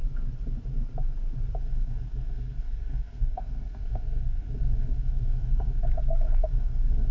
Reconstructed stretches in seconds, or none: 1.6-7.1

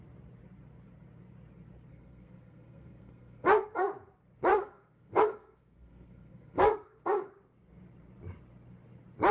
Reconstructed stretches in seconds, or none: 1.9-3.8; 4.5-7.3

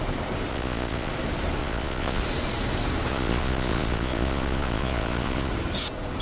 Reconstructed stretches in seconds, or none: 0.5-1.1; 1.6-2.2; 3.1-5.5

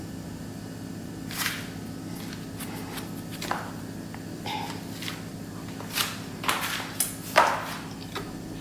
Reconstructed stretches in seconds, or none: none

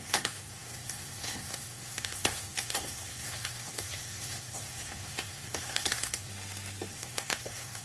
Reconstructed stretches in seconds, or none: 0.0-6.3; 6.9-7.8

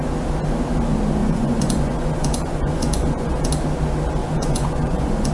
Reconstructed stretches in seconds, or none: 1.2-3.5; 4.2-5.3

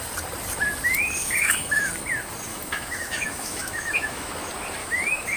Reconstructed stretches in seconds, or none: 1.2-1.9; 2.5-4.3; 4.8-5.4